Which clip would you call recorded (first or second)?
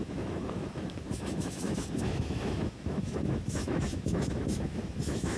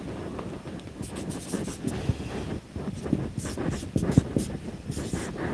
second